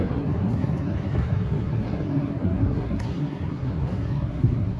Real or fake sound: fake